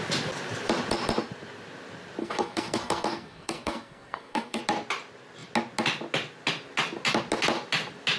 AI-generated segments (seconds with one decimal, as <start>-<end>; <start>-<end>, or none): 2.2-4.6